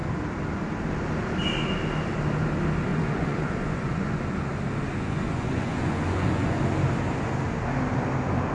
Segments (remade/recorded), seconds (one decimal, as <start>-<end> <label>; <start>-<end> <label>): 0.0-2.9 recorded; 2.9-4.2 remade; 4.2-4.9 recorded; 4.9-6.6 remade; 6.6-8.5 recorded